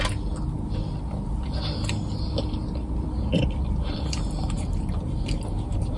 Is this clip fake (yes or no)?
no